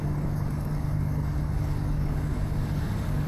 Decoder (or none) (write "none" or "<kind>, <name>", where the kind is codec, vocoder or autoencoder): codec, DAC